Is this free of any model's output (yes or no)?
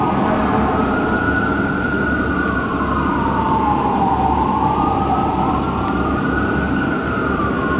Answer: yes